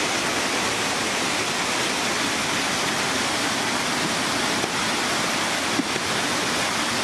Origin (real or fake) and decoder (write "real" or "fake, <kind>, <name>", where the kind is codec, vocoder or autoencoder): real